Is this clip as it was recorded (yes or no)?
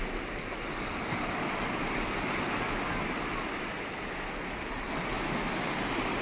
yes